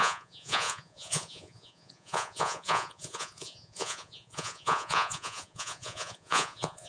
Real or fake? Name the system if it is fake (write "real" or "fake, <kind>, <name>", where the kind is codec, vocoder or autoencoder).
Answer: fake, vocoder, Vocos